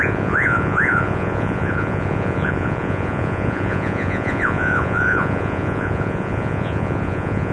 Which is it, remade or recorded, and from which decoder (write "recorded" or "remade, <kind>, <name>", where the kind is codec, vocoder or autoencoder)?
remade, vocoder, Vocos